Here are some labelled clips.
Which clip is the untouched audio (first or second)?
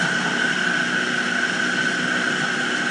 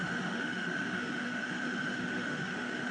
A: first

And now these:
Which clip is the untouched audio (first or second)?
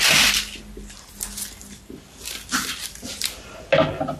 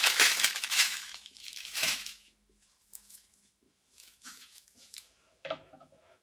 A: first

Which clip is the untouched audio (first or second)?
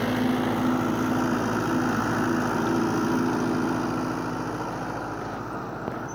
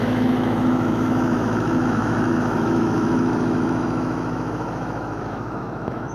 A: first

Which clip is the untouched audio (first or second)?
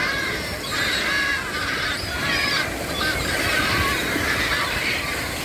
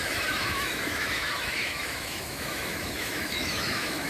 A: first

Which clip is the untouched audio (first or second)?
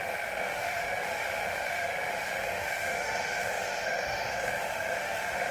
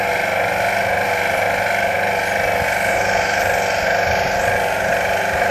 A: second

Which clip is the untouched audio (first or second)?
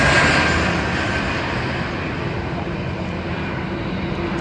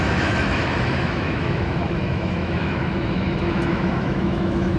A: first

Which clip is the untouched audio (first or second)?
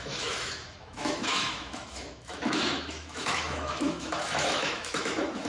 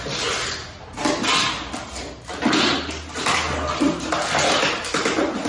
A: second